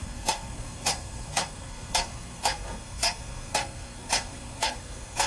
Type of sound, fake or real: fake